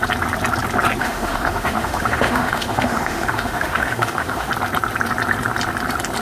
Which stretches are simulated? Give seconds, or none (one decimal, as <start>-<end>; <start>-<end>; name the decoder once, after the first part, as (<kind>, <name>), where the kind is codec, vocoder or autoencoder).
1.0-4.5 (autoencoder, DAC-VAE)